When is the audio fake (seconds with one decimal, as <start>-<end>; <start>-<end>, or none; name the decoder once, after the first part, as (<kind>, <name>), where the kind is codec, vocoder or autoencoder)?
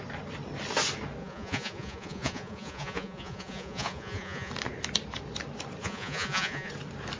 1.2-4.5 (vocoder, Vocos); 5.8-6.7